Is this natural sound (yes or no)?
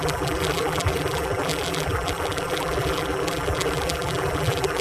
no